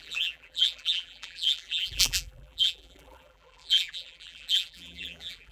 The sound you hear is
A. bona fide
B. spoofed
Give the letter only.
B